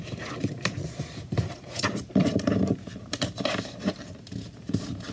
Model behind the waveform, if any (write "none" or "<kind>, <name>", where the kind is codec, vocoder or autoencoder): vocoder, BigVGAN v2